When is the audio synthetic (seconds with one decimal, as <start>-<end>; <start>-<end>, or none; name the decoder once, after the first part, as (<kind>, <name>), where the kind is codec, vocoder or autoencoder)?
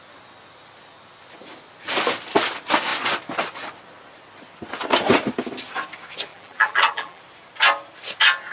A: 6.3-7.2 (vocoder, BigVGAN v2)